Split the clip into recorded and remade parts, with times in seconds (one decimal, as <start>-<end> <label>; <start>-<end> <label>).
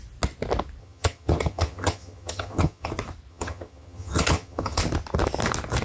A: 0.0-0.8 recorded; 0.8-2.9 remade; 2.9-3.3 recorded; 3.3-4.8 remade; 4.8-5.8 recorded